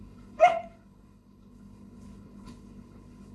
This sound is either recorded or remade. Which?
remade